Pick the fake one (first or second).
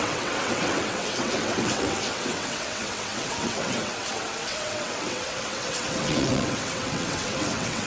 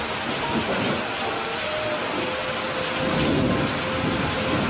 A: first